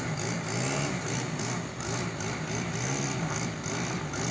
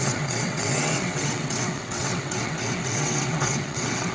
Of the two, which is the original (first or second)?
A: first